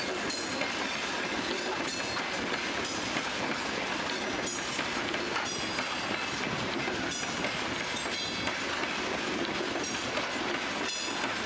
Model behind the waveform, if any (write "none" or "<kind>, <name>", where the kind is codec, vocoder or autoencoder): none